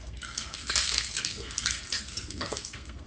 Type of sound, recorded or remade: remade